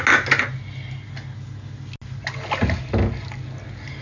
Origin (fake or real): real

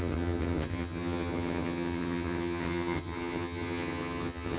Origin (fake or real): fake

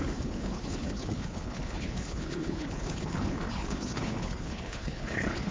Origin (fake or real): fake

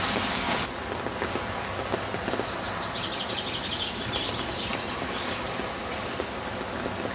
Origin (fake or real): real